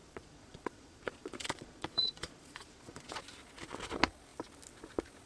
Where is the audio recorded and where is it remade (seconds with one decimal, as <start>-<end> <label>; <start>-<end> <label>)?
0.0-3.2 remade; 3.2-5.3 recorded